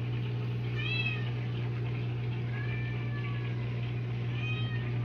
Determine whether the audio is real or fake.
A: real